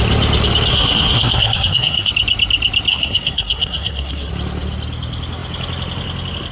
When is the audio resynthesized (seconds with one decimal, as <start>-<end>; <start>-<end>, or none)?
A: 0.7-2.1; 2.9-4.3